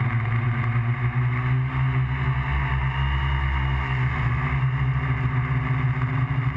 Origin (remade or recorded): recorded